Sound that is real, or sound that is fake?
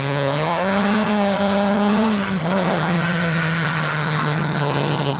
fake